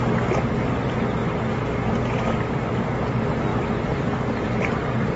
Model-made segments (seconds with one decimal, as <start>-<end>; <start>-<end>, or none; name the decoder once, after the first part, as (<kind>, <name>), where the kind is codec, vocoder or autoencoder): none